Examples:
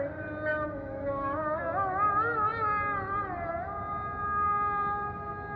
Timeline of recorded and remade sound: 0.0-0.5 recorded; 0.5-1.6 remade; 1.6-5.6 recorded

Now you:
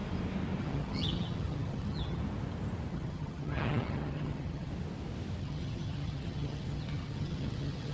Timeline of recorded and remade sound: 0.0-0.6 recorded; 0.6-2.2 remade; 2.2-2.9 recorded; 2.9-4.7 remade; 4.7-5.4 recorded; 5.4-7.9 remade

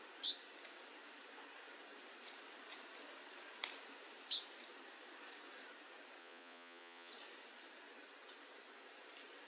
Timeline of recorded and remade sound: 0.0-6.2 recorded; 6.2-7.1 remade; 7.1-9.5 recorded

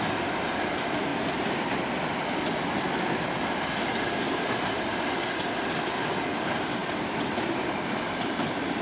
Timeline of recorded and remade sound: 0.0-8.8 recorded